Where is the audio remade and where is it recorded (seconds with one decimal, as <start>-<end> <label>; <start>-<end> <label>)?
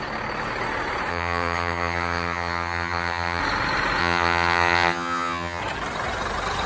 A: 0.0-1.1 recorded; 1.1-3.4 remade; 3.4-4.0 recorded; 4.0-5.6 remade; 5.6-6.7 recorded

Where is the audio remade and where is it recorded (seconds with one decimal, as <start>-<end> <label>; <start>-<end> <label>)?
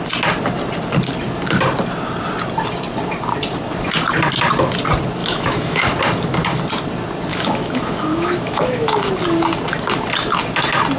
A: 0.0-5.2 recorded; 5.2-5.8 remade; 5.8-7.3 recorded; 7.3-9.1 remade; 9.1-11.0 recorded